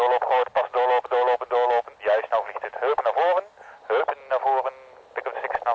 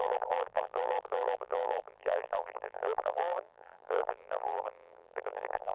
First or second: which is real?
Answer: first